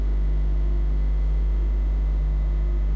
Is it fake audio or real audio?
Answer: fake